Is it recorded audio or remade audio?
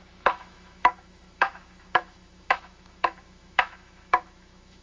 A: remade